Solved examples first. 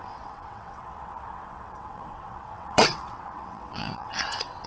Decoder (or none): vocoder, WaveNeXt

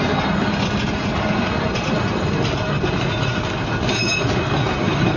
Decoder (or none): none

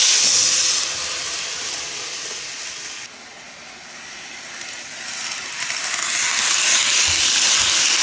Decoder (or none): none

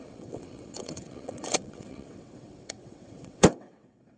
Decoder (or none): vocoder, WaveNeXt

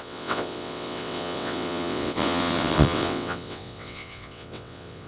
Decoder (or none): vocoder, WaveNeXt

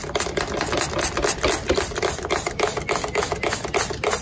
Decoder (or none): none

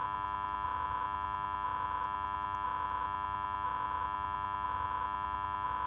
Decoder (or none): none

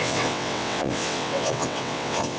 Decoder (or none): vocoder, WaveNeXt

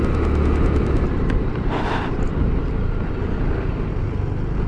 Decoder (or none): none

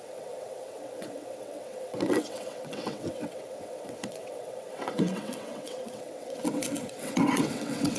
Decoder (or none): vocoder, WaveNeXt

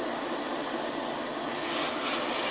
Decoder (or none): none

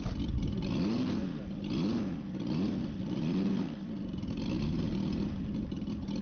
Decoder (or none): none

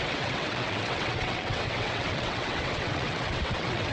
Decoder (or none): vocoder, WaveNeXt